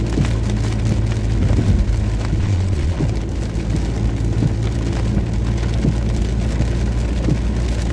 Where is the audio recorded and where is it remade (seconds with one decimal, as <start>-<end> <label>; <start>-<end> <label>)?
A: 0.0-2.4 recorded; 2.4-3.0 remade; 3.0-7.9 recorded